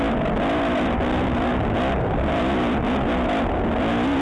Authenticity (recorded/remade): recorded